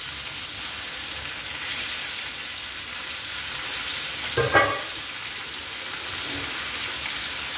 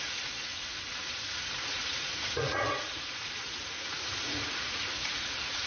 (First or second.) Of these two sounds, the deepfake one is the second